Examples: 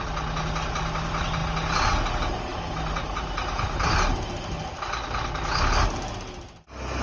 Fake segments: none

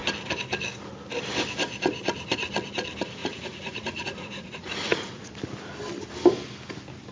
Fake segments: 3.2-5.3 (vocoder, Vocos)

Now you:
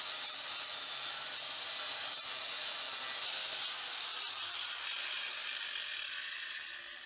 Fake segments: none